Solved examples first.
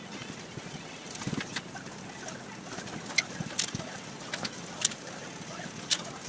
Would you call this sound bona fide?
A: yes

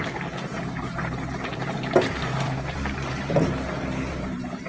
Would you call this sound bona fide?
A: no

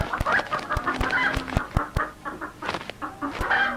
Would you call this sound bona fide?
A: yes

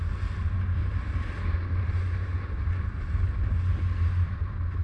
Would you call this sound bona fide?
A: yes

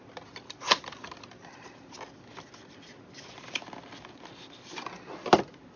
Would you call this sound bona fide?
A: yes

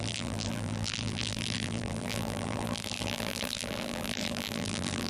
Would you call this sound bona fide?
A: no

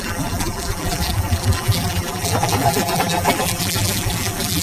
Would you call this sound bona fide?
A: no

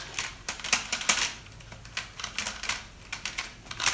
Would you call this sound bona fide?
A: yes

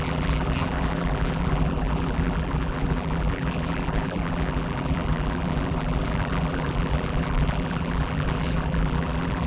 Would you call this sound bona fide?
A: no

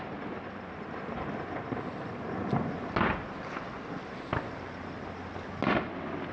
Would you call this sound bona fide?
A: yes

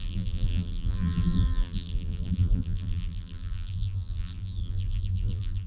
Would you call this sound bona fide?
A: no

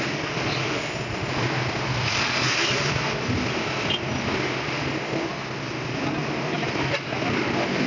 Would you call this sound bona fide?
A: no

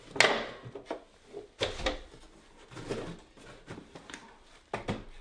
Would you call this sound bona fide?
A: yes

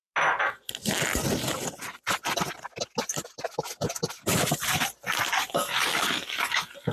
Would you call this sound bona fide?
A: yes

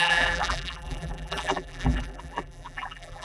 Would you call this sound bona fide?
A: no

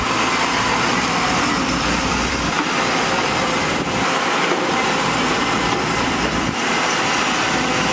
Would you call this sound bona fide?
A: no